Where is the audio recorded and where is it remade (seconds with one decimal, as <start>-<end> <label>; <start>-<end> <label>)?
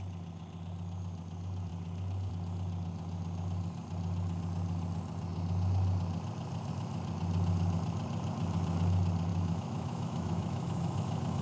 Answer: 0.0-9.3 recorded; 9.3-11.4 remade